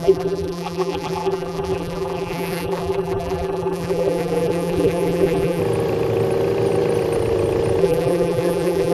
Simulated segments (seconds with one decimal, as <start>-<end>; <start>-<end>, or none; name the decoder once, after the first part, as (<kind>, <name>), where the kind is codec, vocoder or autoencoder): 0.0-5.6 (vocoder, BigVGAN v2); 7.8-8.9